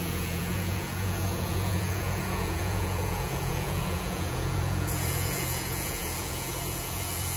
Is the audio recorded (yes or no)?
no